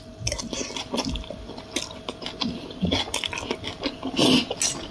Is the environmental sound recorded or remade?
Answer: recorded